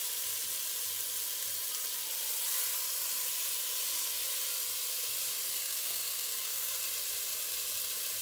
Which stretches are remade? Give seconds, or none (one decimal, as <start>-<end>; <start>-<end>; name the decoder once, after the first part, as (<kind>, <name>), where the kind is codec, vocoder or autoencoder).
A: 5.5-6.8 (codec, SNAC)